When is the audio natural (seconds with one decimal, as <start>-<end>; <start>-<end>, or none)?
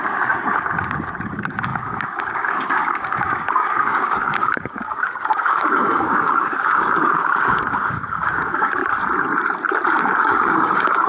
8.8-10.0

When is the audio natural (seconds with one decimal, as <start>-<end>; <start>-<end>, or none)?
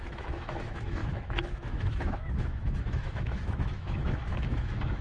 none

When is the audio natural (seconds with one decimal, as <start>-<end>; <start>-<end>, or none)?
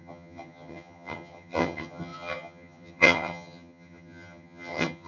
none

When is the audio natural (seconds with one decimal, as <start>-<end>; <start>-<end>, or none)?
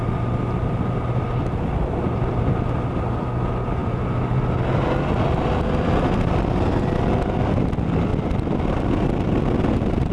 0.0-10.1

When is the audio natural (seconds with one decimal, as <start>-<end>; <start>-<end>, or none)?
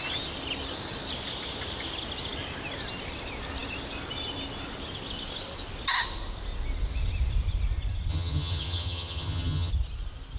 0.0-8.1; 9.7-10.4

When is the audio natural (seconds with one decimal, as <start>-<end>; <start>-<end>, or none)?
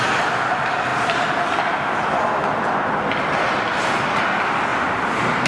0.0-4.7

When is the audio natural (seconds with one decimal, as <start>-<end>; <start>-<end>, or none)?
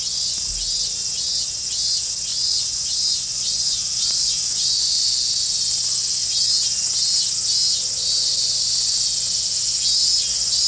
0.0-2.3; 5.0-10.7